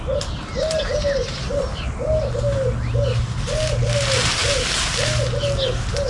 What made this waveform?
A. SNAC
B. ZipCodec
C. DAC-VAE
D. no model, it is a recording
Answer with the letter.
D